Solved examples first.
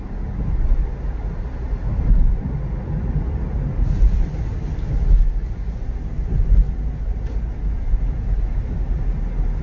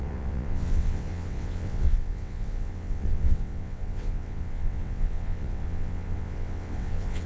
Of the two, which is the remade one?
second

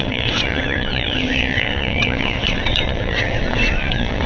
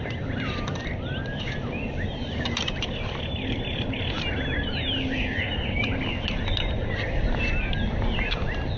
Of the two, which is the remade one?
first